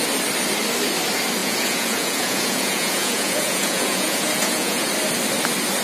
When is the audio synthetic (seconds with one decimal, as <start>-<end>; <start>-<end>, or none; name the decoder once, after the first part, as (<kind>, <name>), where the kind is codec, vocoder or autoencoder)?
1.4-4.9 (vocoder, Vocos)